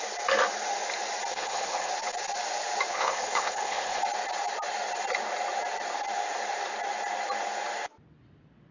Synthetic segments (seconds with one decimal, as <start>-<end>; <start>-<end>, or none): 1.3-1.9; 2.9-4.0